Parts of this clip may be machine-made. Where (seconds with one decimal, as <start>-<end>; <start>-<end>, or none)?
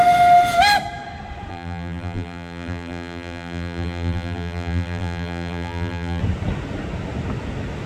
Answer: 1.5-6.2